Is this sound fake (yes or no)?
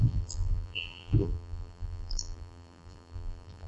yes